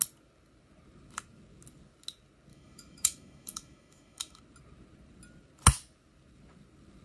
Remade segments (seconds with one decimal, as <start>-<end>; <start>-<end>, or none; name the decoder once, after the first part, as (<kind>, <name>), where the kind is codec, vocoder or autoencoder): 2.5-4.4 (autoencoder, DAC-VAE)